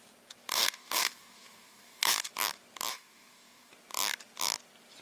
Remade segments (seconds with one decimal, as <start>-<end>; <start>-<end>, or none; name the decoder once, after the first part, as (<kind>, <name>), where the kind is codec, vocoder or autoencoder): 0.5-2.3 (codec, DAC); 2.9-3.7